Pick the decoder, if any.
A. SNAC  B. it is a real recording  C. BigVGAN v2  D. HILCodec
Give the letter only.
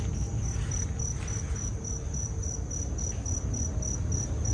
B